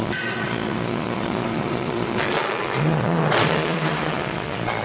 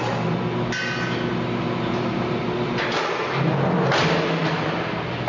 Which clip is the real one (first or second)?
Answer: second